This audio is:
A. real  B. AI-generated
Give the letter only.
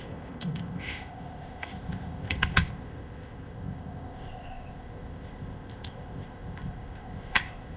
B